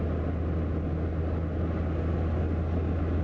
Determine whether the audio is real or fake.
real